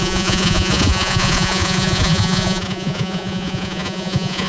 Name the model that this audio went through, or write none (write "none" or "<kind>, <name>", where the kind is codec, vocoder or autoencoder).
vocoder, Vocos